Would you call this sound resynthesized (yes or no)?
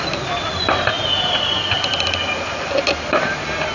no